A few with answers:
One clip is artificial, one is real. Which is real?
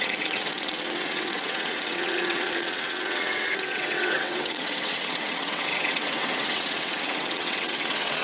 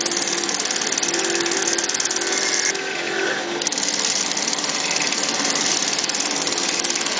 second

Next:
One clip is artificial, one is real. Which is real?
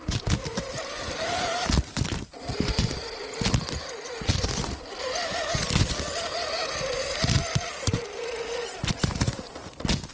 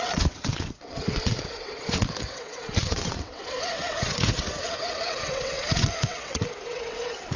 first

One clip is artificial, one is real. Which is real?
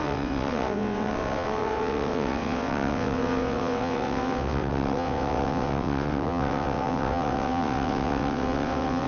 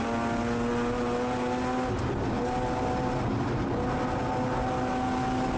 second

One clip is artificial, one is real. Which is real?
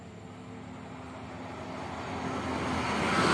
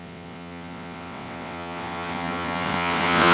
first